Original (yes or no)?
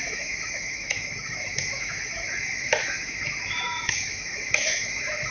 no